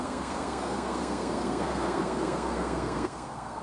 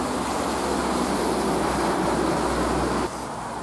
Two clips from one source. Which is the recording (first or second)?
second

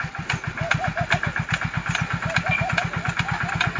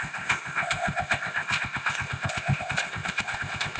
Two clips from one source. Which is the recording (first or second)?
first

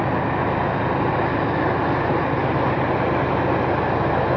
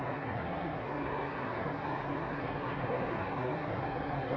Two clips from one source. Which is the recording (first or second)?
first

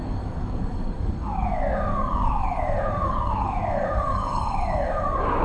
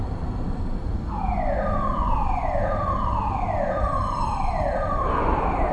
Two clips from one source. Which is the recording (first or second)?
second